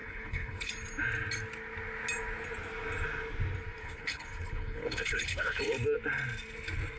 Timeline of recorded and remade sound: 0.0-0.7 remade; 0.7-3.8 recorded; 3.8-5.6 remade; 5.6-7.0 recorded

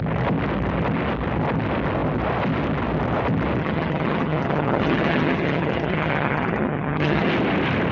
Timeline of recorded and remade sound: 0.0-3.6 recorded; 3.6-7.3 remade; 7.3-7.9 recorded